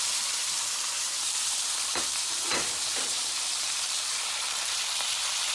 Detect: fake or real fake